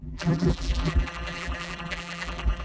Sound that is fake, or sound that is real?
fake